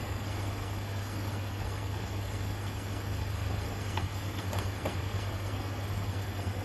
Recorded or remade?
remade